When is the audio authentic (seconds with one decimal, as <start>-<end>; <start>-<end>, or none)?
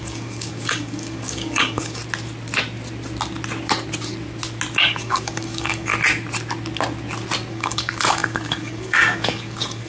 2.0-4.8; 5.9-7.5